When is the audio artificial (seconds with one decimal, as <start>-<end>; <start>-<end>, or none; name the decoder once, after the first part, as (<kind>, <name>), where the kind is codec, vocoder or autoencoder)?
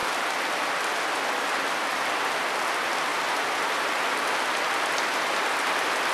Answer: none